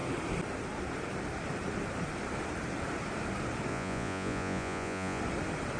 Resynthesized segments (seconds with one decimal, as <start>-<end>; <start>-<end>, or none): 3.7-5.2